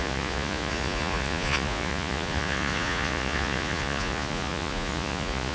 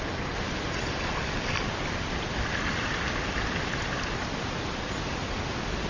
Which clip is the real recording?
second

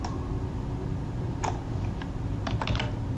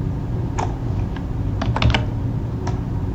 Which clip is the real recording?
second